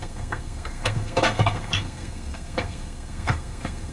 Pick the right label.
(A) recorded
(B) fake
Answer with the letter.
B